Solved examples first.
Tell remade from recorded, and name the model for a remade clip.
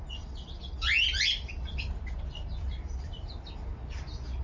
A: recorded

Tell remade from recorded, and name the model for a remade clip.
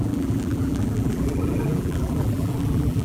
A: remade, vocoder, BigVGAN v2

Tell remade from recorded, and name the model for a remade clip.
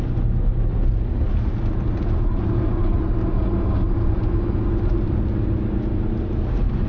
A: recorded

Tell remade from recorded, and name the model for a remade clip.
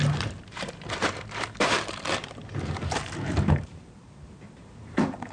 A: remade, vocoder, BigVGAN v2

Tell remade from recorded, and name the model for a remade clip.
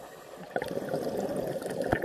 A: recorded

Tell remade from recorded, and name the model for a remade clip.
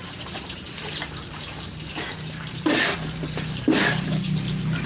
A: remade, vocoder, BigVGAN v2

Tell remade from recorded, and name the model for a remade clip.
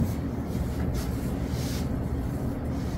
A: recorded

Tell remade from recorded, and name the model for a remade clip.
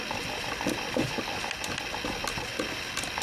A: remade, vocoder, BigVGAN v2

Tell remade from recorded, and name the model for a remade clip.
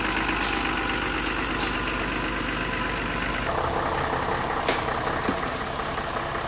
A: recorded